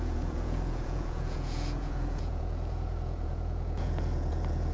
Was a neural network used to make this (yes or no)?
yes